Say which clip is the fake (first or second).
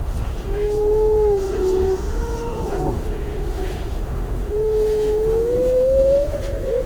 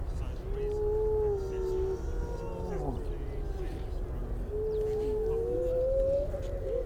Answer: first